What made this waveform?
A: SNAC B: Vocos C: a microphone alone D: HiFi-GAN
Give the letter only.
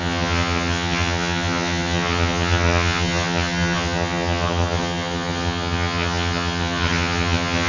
D